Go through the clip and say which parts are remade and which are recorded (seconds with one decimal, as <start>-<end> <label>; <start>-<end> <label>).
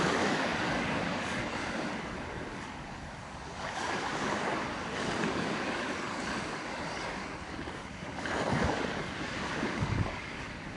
0.0-10.8 remade